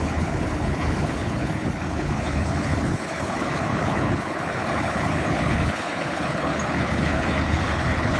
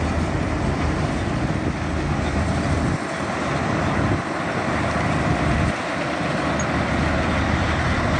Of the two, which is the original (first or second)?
second